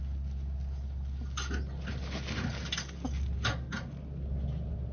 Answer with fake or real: real